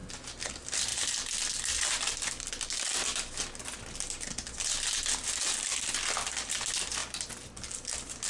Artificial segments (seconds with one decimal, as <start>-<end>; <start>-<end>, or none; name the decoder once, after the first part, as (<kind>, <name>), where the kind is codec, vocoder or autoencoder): 0.9-2.5 (vocoder, BigVGAN v2); 7.0-7.7